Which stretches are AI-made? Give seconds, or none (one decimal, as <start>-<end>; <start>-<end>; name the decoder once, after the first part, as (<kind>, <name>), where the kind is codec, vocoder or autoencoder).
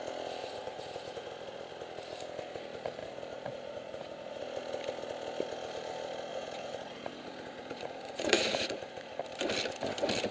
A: 0.4-1.7 (vocoder, Vocos); 3.0-4.4; 6.3-9.2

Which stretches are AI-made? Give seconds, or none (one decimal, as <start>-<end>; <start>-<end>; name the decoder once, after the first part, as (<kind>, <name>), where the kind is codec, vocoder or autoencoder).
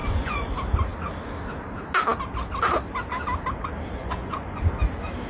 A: 0.0-0.5 (vocoder, Vocos); 4.0-4.6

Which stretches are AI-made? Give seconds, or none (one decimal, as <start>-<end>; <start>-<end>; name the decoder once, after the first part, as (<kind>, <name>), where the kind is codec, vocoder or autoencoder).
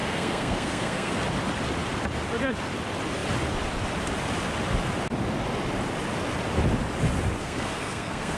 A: 0.0-1.1 (codec, SNAC); 7.4-8.4